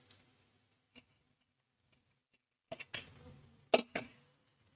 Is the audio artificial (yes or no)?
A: no